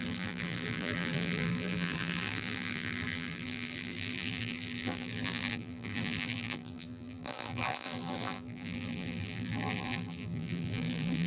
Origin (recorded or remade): remade